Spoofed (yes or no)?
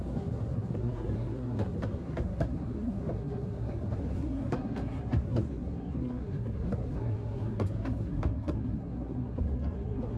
yes